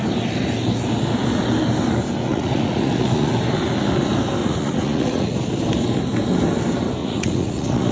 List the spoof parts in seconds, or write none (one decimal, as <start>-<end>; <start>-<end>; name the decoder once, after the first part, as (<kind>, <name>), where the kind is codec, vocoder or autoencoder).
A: 2.3-3.3 (vocoder, Vocos); 4.4-5.3; 7.0-7.9

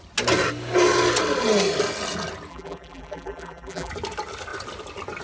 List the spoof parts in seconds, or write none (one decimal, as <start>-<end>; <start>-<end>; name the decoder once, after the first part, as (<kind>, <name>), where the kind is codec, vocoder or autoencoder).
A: 2.5-3.9 (vocoder, BigVGAN v2)

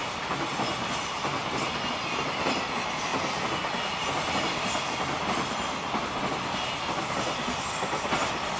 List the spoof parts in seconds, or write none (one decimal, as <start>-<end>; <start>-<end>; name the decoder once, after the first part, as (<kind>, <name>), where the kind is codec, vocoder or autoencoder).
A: none

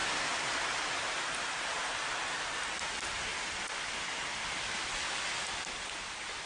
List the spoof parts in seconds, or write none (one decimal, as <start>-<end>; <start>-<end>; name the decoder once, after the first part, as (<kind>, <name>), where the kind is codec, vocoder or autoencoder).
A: none

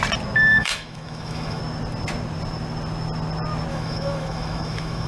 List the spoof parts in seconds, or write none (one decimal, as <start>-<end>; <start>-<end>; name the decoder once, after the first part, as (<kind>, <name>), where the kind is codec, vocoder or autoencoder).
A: 0.5-1.6 (autoencoder, DAC-VAE); 3.7-5.1

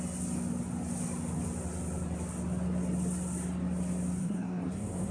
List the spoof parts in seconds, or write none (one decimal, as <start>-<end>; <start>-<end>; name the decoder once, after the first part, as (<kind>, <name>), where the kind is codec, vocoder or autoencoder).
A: 4.2-5.1 (codec, SNAC)